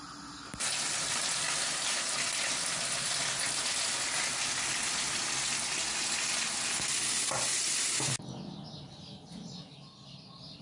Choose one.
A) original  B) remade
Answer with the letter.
A